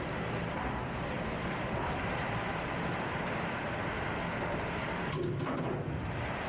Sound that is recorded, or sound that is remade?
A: remade